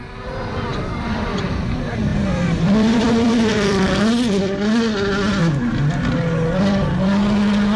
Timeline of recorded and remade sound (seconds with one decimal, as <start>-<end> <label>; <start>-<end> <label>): 0.0-0.7 recorded; 0.7-1.4 remade; 1.4-2.1 recorded; 2.1-4.0 remade; 4.0-7.8 recorded